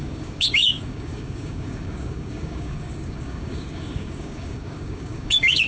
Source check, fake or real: fake